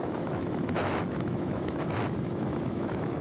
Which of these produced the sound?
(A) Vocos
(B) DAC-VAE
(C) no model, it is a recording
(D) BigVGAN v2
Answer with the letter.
B